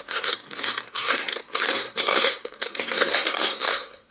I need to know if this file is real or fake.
fake